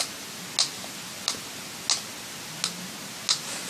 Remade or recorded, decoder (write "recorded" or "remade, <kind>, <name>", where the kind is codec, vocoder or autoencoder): recorded